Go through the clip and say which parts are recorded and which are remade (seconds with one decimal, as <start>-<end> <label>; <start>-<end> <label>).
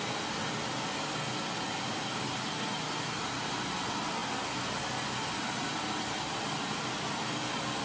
0.0-7.8 recorded